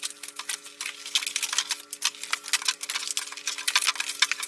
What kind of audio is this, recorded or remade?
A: recorded